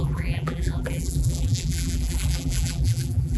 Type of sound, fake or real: fake